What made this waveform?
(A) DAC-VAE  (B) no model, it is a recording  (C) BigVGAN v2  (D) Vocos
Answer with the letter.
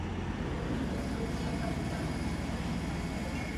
B